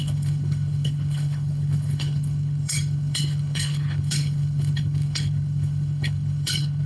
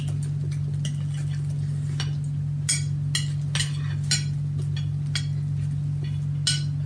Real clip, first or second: second